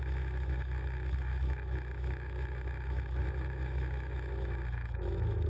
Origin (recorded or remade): remade